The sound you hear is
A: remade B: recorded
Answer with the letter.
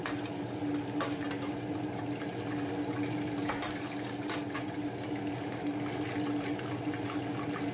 B